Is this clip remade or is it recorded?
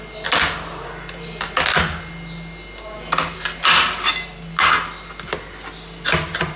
recorded